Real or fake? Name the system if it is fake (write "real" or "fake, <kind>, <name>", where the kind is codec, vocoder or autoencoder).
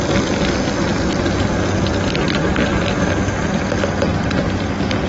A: real